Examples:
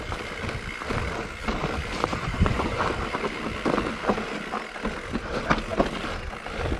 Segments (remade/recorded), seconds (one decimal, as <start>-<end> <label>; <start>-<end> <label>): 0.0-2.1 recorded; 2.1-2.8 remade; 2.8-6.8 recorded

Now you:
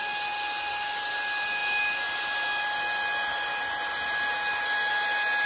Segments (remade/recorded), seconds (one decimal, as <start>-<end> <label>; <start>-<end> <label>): 0.0-5.5 recorded

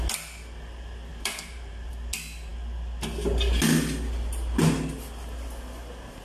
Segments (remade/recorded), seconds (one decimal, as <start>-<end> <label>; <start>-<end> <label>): 0.0-1.1 recorded; 1.1-1.9 remade; 1.9-6.2 recorded

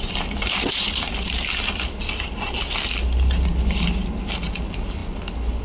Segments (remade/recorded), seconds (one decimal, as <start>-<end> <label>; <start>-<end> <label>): 0.0-5.6 recorded

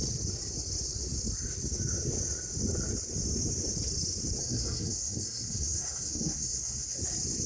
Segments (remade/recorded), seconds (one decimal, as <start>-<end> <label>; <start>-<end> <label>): 0.0-4.4 recorded; 4.4-7.0 remade; 7.0-7.5 recorded

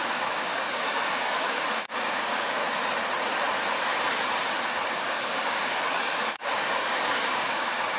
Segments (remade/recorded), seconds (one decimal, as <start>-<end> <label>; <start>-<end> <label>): 0.0-2.6 remade; 2.6-4.9 recorded; 4.9-8.0 remade